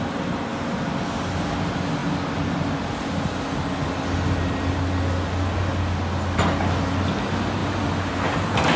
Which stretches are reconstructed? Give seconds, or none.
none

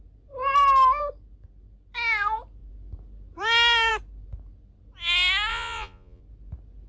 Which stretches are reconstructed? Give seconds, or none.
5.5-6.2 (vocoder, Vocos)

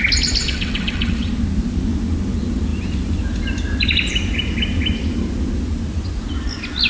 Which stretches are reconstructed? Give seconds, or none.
0.4-1.3 (vocoder, WaveNeXt)

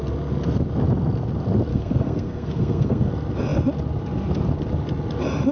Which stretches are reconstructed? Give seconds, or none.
1.7-3.1 (codec, SNAC)